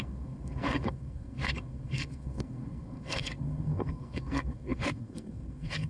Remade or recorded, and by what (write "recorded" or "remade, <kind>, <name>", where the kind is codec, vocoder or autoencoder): remade, codec, SNAC